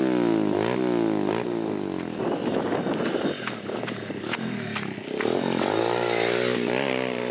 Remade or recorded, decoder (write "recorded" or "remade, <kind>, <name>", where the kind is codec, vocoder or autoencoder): recorded